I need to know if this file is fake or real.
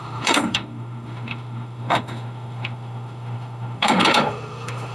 fake